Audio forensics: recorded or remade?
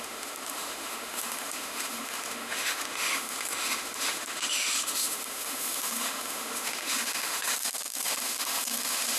remade